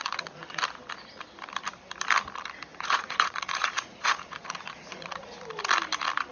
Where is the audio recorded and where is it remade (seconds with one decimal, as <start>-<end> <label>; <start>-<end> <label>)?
0.0-0.6 remade; 0.6-2.7 recorded; 2.7-5.3 remade; 5.3-6.3 recorded